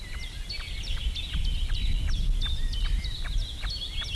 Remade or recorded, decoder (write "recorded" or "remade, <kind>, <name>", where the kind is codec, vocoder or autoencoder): recorded